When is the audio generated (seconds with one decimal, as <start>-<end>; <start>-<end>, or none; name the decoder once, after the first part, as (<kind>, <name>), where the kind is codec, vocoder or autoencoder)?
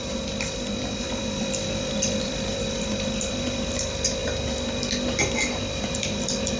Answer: 0.0-4.2 (vocoder, BigVGAN v2); 5.6-6.6